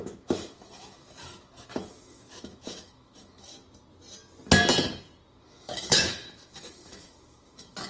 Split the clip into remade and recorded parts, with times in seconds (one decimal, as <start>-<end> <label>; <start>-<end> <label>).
0.0-3.5 remade; 3.5-5.3 recorded; 5.3-7.9 remade